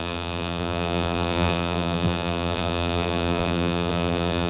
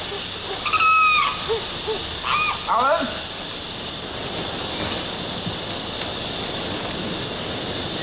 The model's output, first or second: first